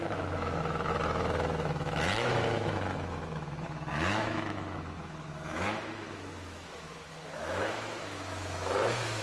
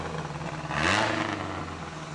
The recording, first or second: second